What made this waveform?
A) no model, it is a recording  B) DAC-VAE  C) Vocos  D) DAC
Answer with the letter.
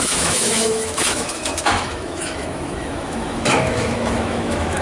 B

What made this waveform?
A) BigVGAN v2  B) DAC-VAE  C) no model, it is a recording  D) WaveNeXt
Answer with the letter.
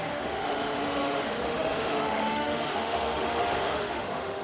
B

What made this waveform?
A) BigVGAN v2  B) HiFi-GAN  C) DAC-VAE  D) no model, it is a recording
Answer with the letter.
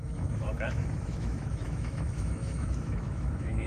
C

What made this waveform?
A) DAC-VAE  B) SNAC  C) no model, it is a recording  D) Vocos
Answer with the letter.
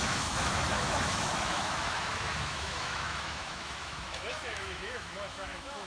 A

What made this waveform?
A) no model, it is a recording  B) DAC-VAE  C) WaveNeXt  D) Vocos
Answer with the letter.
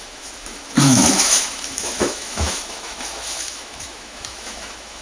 B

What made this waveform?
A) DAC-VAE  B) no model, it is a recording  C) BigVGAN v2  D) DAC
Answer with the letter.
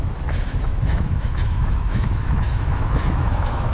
A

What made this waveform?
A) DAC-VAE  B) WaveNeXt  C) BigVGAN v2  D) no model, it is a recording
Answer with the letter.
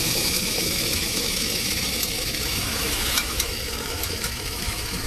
A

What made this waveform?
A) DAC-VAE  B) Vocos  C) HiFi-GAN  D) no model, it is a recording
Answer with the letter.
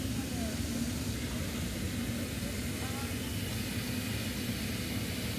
D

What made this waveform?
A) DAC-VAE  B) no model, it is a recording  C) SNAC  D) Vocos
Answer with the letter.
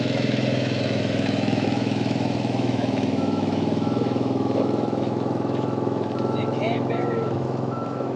A